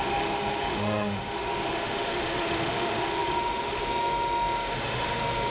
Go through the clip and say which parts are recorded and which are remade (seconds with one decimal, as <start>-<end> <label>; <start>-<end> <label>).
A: 0.0-5.5 remade